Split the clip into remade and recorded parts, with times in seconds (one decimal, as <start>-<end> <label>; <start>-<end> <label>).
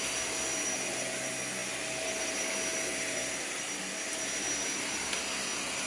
0.0-5.9 recorded